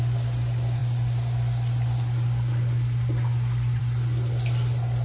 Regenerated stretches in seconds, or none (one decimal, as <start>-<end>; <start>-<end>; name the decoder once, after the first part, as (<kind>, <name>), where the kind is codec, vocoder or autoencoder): none